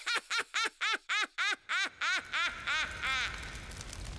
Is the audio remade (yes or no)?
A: no